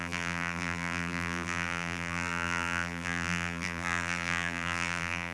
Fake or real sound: fake